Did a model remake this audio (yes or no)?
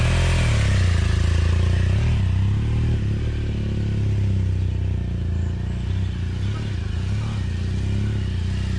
no